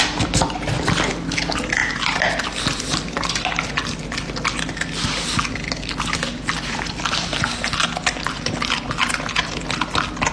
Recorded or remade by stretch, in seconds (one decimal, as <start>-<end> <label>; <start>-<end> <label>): 0.0-10.3 recorded